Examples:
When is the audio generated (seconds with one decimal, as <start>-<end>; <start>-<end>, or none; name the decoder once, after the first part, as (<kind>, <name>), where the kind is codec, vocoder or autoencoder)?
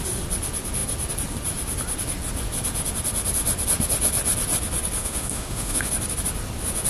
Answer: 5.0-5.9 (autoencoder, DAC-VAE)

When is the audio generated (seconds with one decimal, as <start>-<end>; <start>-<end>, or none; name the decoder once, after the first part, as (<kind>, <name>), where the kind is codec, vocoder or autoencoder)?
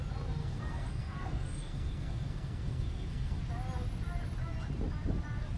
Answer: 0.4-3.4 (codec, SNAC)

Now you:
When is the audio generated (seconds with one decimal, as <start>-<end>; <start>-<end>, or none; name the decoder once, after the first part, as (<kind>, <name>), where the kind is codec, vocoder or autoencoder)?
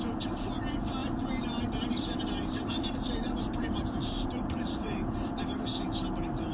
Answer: 1.0-4.9 (vocoder, BigVGAN v2)